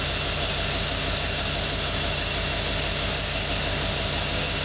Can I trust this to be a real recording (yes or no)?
yes